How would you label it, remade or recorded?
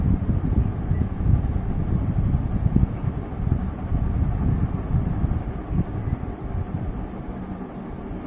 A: recorded